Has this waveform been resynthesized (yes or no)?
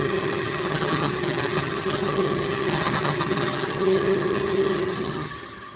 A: yes